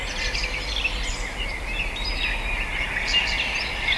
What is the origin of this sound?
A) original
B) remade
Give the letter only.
A